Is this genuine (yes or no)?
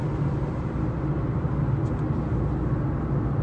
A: yes